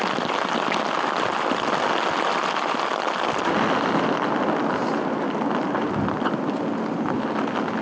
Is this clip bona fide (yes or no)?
yes